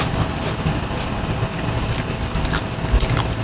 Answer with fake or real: real